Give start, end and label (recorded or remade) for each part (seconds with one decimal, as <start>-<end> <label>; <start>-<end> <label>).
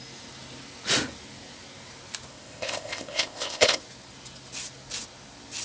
0.0-2.3 recorded; 2.3-3.8 remade; 3.8-5.6 recorded